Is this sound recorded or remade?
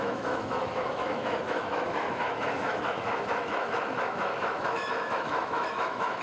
remade